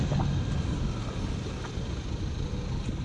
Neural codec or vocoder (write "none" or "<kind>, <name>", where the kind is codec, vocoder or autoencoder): none